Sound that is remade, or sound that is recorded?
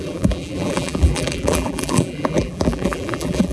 remade